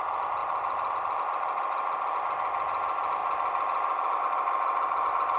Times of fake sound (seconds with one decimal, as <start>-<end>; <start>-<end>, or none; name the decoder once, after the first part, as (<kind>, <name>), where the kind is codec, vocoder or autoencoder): 0.4-0.9 (vocoder, BigVGAN v2); 3.2-4.2